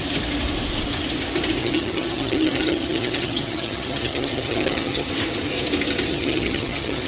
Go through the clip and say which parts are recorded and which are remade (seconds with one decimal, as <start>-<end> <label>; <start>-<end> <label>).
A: 0.0-1.6 recorded; 1.6-5.1 remade; 5.1-6.1 recorded; 6.1-7.1 remade